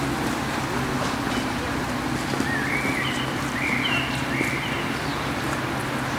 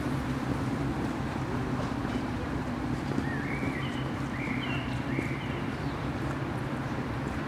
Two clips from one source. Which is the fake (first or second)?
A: second